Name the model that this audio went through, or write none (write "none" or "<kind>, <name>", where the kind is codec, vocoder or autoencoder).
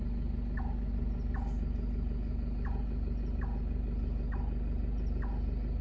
none